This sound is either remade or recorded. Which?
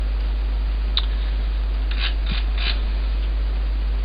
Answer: recorded